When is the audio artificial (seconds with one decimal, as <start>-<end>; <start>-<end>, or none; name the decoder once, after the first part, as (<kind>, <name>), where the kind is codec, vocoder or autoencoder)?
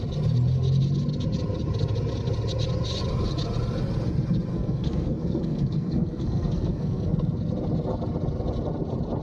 4.5-7.4 (codec, SNAC)